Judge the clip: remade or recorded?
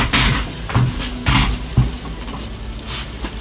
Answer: recorded